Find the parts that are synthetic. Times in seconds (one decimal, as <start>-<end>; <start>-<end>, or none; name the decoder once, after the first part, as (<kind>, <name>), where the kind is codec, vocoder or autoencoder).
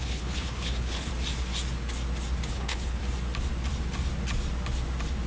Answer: 0.0-1.1 (codec, HILCodec); 2.5-3.0